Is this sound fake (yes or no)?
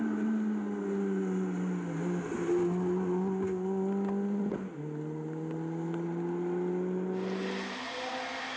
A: no